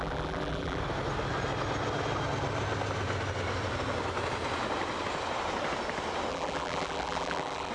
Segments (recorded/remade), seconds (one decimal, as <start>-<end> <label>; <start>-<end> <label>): 0.0-0.8 remade; 0.8-6.3 recorded; 6.3-7.7 remade